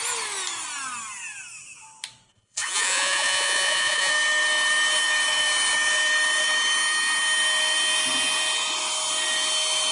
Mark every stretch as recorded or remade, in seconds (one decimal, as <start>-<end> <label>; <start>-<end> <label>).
0.0-2.3 recorded; 2.3-4.1 remade; 4.1-9.9 recorded

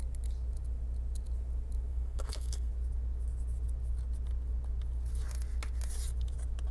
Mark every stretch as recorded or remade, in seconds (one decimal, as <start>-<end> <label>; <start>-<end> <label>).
0.0-1.9 recorded; 1.9-2.7 remade; 2.7-6.7 recorded